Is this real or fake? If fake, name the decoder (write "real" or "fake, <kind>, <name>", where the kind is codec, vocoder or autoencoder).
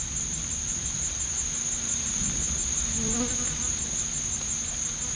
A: fake, vocoder, BigVGAN v2